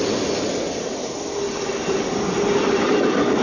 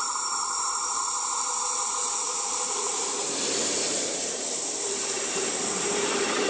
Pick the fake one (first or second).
second